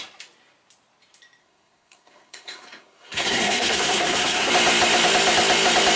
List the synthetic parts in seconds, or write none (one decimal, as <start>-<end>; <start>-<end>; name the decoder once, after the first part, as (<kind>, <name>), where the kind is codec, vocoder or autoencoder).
1.4-4.5 (codec, SNAC)